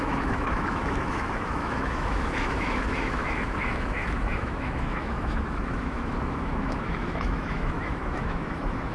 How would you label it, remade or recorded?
remade